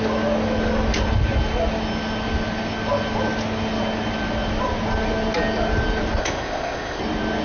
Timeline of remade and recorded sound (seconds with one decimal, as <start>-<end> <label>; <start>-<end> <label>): 0.0-6.2 recorded; 6.2-7.0 remade; 7.0-7.4 recorded